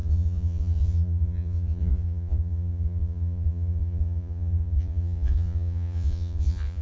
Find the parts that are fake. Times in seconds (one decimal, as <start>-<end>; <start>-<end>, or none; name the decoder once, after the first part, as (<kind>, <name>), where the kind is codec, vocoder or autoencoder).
0.0-6.8 (vocoder, Vocos)